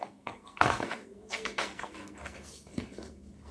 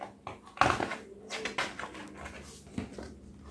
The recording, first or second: second